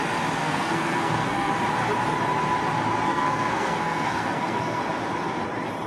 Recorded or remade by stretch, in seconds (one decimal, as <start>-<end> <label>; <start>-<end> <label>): 0.0-0.4 recorded; 0.4-1.5 remade; 1.5-3.1 recorded; 3.1-4.8 remade; 4.8-5.9 recorded